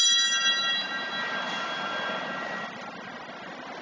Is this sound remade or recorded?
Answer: recorded